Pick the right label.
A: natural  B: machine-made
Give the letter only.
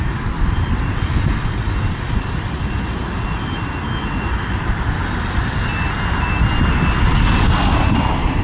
A